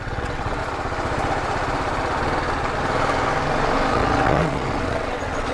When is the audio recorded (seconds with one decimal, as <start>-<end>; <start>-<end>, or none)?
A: 0.6-3.9